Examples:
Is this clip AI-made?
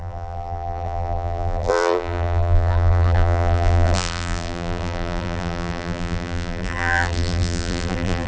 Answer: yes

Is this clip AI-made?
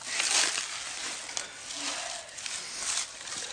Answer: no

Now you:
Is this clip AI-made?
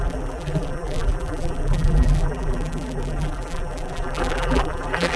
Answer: yes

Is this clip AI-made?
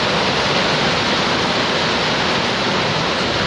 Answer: no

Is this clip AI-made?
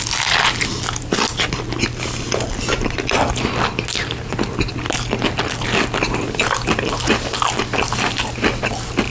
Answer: no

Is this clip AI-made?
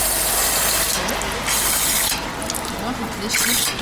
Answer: no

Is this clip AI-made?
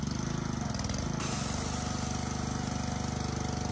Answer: no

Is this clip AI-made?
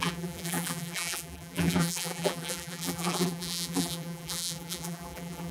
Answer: yes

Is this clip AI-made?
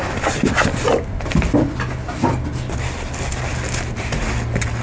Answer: no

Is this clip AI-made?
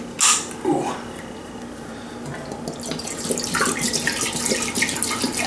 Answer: no